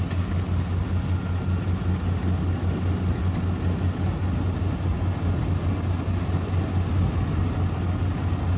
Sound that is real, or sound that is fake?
real